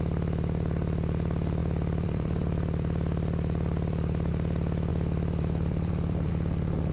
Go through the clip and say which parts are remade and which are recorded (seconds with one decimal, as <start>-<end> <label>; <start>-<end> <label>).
0.0-1.6 recorded; 1.6-4.3 remade; 4.3-4.9 recorded; 4.9-6.3 remade; 6.3-6.9 recorded